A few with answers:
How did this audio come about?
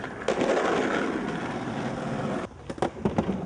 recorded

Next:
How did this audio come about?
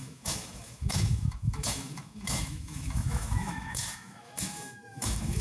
remade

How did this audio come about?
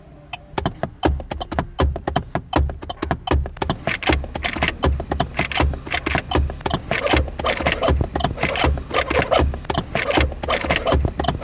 recorded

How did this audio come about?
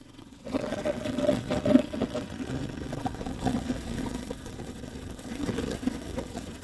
remade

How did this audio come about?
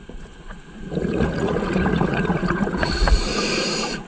remade